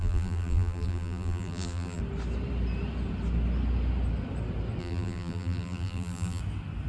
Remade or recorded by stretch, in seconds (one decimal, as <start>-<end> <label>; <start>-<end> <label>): 0.0-2.0 remade; 2.0-4.8 recorded; 4.8-6.4 remade; 6.4-6.9 recorded